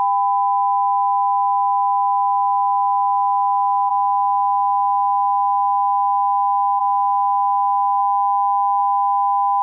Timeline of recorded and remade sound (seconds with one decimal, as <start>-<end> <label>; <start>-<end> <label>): 0.0-9.6 recorded